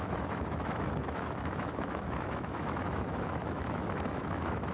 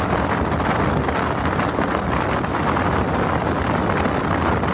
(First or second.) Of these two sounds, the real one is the second